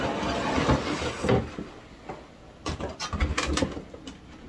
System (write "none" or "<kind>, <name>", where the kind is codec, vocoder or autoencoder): none